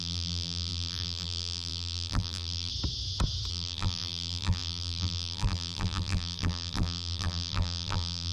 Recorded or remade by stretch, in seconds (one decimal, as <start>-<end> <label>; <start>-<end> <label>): 0.0-2.7 remade; 2.7-3.5 recorded; 3.5-8.3 remade